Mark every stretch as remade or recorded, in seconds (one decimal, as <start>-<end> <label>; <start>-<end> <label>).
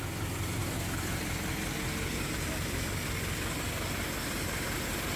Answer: 0.0-5.2 recorded